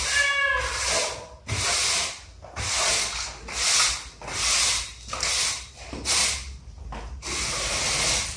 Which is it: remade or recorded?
recorded